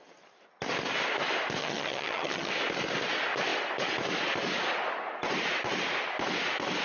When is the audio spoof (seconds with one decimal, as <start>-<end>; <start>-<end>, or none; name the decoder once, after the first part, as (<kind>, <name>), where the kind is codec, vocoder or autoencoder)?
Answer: 1.6-2.5 (vocoder, HiFi-GAN)